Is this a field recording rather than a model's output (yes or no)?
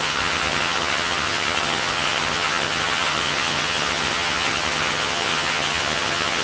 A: no